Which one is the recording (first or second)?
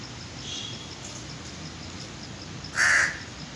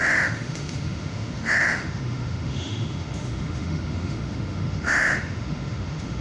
first